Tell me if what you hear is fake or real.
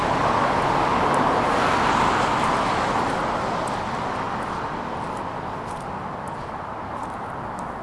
real